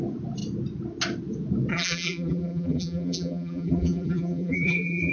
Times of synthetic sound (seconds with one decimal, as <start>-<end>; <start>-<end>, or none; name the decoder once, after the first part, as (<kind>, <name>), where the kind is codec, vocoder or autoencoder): 1.7-5.1 (vocoder, BigVGAN v2)